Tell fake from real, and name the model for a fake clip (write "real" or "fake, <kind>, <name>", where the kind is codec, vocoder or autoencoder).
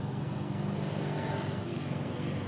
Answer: fake, codec, SNAC